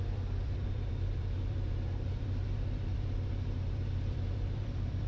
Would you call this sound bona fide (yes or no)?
no